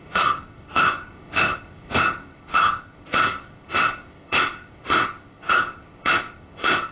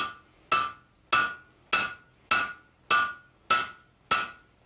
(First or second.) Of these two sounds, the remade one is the first